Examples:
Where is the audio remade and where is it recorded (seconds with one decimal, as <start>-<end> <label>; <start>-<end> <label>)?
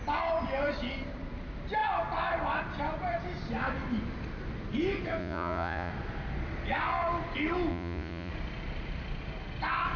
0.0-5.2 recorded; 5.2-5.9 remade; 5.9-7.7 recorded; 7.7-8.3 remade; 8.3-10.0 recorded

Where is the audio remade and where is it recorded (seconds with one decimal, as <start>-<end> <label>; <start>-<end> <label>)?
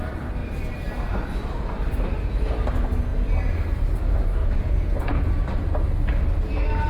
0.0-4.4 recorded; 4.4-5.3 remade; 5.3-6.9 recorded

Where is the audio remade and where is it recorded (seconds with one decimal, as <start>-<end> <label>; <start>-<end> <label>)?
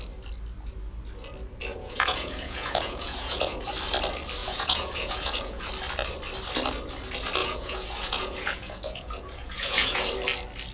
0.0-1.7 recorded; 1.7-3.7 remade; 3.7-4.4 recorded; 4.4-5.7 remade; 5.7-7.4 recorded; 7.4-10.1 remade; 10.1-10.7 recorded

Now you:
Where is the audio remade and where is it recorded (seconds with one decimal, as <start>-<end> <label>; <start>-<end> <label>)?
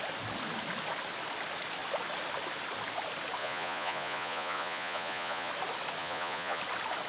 0.0-3.4 recorded; 3.4-5.5 remade; 5.5-6.0 recorded; 6.0-6.6 remade; 6.6-7.1 recorded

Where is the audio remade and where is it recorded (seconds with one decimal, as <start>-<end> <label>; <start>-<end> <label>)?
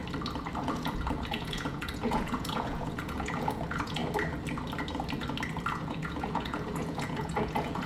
0.0-0.6 recorded; 0.6-4.0 remade; 4.0-5.7 recorded; 5.7-7.9 remade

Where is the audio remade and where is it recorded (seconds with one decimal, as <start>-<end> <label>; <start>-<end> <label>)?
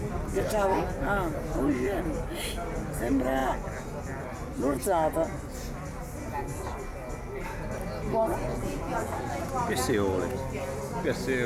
0.0-8.5 recorded; 8.5-9.4 remade; 9.4-11.5 recorded